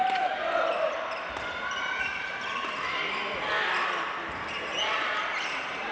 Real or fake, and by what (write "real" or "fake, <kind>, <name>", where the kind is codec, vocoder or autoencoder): real